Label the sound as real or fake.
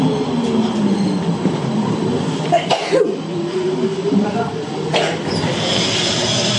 fake